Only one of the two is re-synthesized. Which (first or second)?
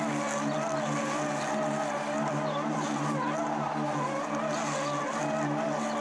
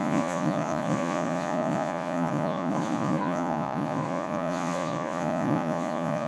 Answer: second